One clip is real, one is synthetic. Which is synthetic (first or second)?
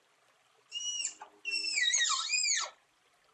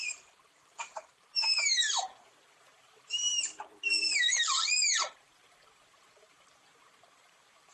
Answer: second